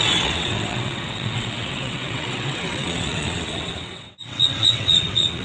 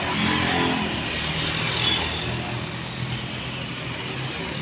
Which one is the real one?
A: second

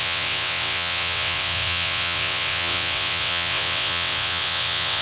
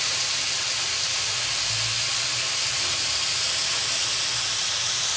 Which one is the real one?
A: second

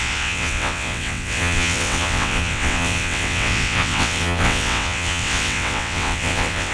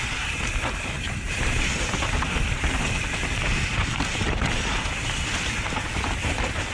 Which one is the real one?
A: second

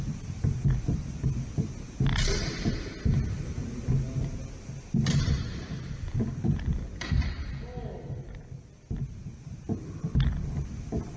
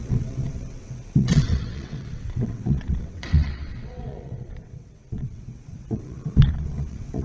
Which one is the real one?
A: first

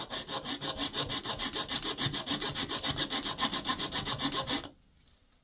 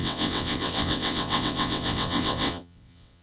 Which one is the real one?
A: first